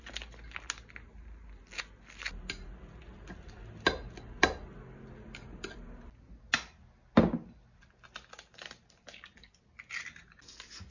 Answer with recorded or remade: recorded